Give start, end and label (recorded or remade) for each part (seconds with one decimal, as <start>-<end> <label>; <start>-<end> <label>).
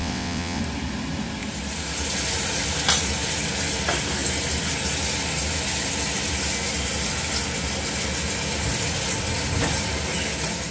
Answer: 0.0-0.6 remade; 0.6-10.7 recorded